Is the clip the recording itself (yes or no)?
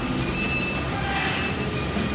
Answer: yes